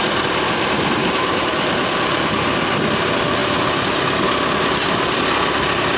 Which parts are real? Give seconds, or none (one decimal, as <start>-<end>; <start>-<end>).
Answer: 0.0-1.0; 2.3-3.4; 4.2-6.0